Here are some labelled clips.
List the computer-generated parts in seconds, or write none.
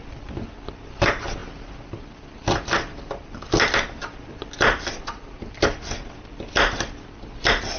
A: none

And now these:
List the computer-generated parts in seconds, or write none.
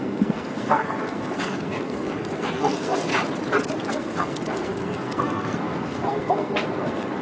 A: 0.0-3.1; 3.9-7.2